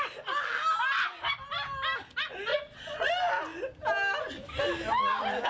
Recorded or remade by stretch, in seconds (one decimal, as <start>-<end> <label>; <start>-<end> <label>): 0.0-2.5 recorded; 2.5-3.1 remade; 3.1-5.5 recorded